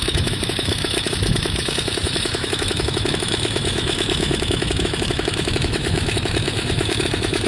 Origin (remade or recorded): remade